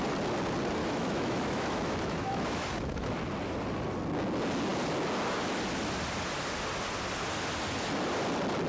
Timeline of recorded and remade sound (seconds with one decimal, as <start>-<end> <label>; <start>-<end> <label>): 0.0-0.8 recorded; 0.8-3.1 remade; 3.1-8.7 recorded